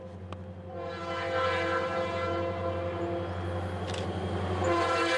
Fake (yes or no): no